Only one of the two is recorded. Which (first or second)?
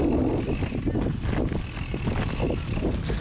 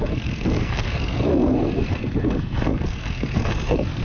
first